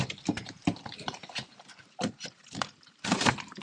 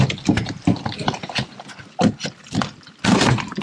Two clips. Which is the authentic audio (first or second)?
second